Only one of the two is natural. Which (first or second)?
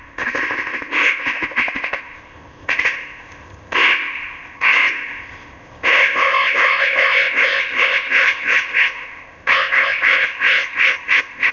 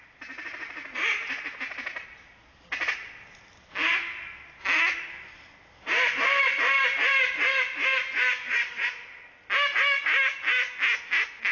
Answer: second